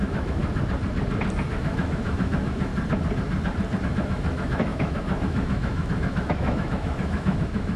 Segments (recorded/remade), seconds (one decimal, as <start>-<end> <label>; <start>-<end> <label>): 0.0-0.4 remade; 0.4-1.5 recorded; 1.5-2.7 remade; 2.7-3.8 recorded; 3.8-7.8 remade